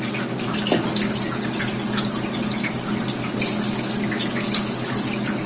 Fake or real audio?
real